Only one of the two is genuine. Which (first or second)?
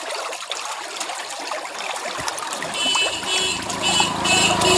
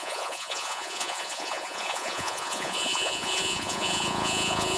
first